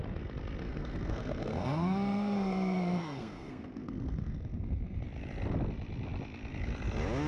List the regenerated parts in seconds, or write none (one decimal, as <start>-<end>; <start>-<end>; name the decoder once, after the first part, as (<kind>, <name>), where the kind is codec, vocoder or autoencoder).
0.6-5.0 (codec, SNAC)